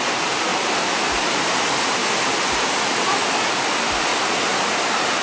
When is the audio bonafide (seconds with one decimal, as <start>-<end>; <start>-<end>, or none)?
2.0-2.7